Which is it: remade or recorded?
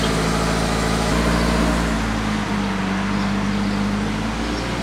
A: recorded